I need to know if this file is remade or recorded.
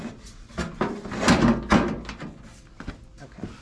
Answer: recorded